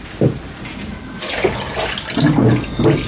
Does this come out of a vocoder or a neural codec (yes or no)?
no